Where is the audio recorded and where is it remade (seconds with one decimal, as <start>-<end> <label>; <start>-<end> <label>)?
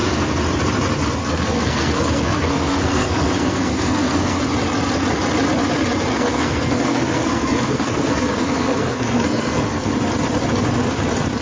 0.0-1.2 recorded; 1.2-4.4 remade; 4.4-6.1 recorded; 6.1-9.9 remade; 9.9-11.4 recorded